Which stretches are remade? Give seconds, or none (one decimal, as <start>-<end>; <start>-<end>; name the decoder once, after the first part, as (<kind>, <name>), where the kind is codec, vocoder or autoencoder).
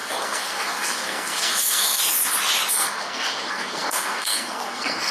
0.0-2.0 (codec, SNAC); 2.7-5.1